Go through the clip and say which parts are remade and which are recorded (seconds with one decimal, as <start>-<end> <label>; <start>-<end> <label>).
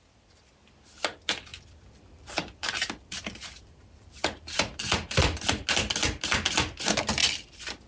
0.0-1.5 recorded; 1.5-5.5 remade; 5.5-7.2 recorded; 7.2-7.9 remade